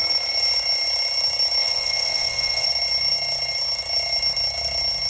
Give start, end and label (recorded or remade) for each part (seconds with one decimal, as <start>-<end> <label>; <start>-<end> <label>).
0.0-1.6 recorded; 1.6-2.7 remade; 2.7-5.1 recorded